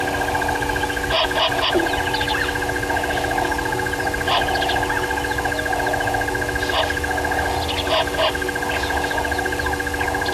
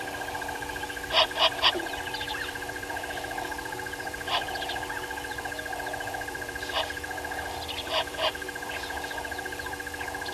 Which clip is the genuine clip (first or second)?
first